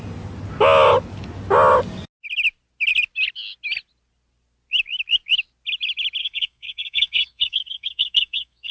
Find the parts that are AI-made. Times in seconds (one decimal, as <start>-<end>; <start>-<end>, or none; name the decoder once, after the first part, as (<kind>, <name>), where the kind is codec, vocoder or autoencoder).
6.2-8.7 (codec, SNAC)